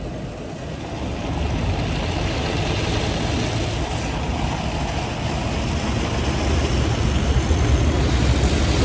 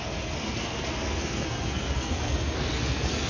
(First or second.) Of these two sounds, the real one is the first